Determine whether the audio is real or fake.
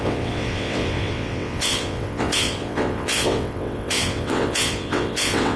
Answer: fake